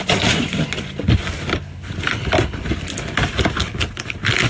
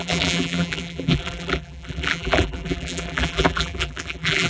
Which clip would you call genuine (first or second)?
first